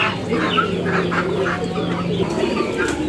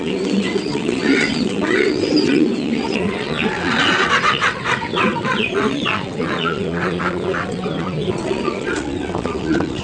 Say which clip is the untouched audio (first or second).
first